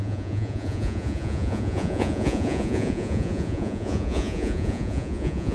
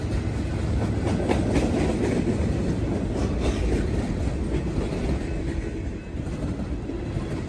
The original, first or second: second